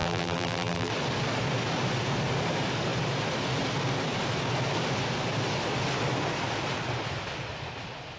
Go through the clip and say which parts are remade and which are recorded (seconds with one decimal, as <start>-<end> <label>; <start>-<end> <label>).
0.0-0.9 remade; 0.9-8.2 recorded